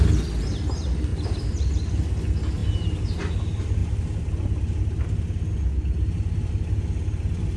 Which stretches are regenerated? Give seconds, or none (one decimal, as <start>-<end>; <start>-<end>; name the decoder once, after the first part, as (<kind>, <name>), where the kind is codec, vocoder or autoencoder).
1.1-1.7 (vocoder, BigVGAN v2); 3.8-5.0